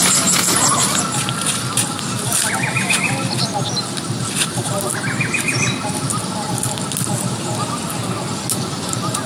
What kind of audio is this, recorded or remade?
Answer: recorded